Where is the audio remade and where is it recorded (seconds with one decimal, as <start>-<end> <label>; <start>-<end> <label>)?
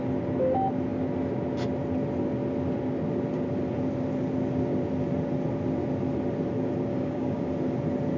0.0-6.9 recorded; 6.9-7.5 remade; 7.5-8.2 recorded